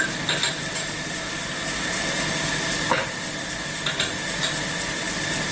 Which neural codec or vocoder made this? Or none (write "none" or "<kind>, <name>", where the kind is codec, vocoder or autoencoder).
none